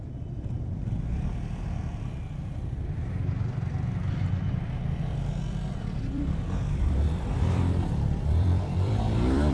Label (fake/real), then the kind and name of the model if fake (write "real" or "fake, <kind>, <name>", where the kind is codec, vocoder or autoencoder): fake, vocoder, BigVGAN v2